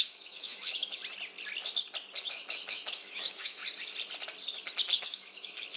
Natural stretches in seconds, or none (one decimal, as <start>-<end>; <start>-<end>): 1.0-2.3; 3.6-5.0